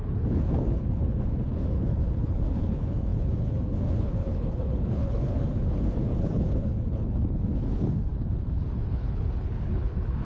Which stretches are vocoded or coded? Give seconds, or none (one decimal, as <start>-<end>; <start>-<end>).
0.0-10.2